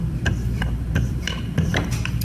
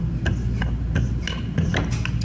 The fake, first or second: first